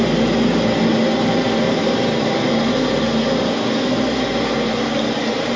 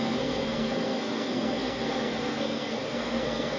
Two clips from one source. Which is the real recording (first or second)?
first